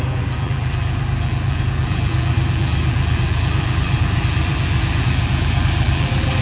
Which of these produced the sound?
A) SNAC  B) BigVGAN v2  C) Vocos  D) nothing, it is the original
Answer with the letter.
B